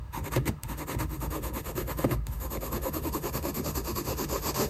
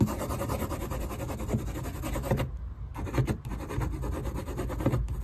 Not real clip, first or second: first